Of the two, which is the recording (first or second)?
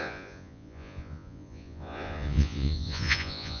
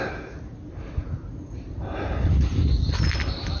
second